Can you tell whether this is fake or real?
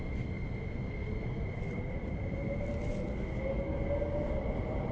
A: real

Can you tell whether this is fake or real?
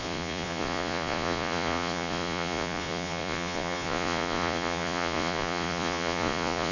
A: fake